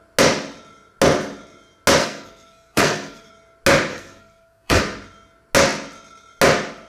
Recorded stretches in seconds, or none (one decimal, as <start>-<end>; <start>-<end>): 0.0-2.0; 3.3-3.9; 4.8-6.9